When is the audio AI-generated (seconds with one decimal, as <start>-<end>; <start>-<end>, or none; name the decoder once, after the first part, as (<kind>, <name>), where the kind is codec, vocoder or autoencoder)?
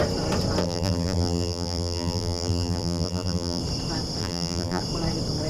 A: 0.6-3.6 (vocoder, BigVGAN v2); 4.2-4.8